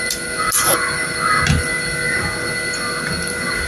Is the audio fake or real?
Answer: real